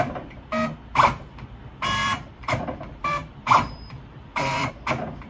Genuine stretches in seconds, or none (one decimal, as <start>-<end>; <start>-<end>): 0.0-2.0; 4.7-5.3